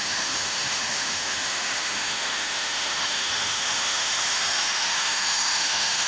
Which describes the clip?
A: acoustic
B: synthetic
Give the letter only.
B